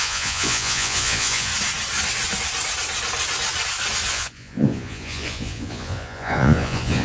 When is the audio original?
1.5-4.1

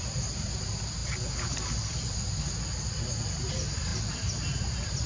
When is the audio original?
0.0-5.1

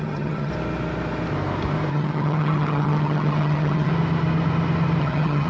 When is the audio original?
0.5-1.9; 3.9-5.0